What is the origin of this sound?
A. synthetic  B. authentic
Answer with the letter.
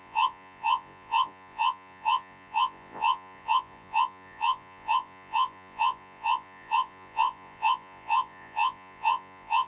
A